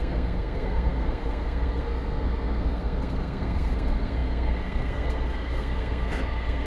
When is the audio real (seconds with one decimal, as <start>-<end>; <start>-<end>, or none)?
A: none